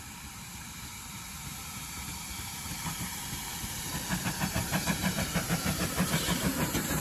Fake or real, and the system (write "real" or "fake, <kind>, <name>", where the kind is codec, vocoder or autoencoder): fake, vocoder, BigVGAN v2